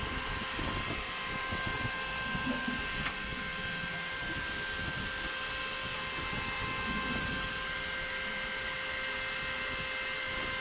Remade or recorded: recorded